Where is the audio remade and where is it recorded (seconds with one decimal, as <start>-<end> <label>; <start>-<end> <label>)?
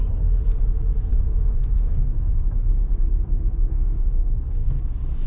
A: 0.0-1.1 recorded; 1.1-2.3 remade; 2.3-3.7 recorded; 3.7-4.8 remade; 4.8-5.3 recorded